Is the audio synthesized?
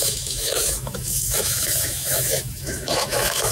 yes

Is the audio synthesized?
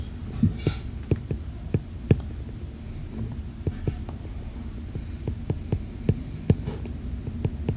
no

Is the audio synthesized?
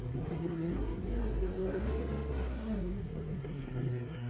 yes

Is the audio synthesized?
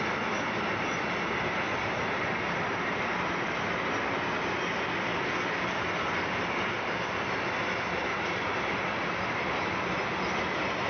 no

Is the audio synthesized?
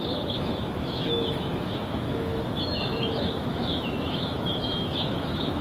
yes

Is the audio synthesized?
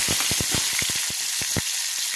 no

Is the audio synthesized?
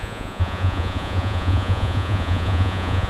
yes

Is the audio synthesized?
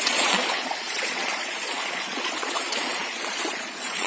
yes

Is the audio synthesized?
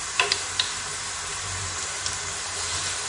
yes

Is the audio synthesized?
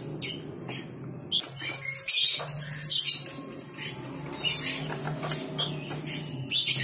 no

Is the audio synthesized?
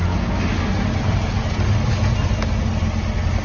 no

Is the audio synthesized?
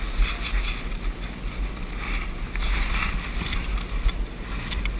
no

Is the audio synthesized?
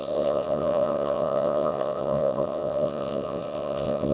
yes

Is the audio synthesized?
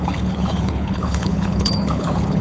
yes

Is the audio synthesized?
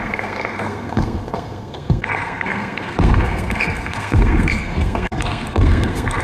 yes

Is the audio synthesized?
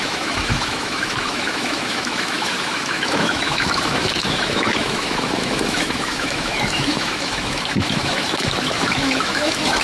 yes